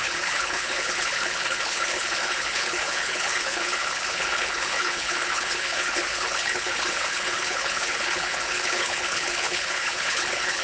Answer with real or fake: fake